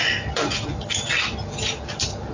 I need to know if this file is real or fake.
real